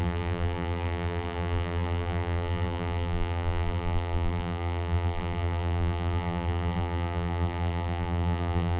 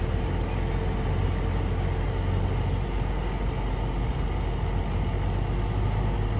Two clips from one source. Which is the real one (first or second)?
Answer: second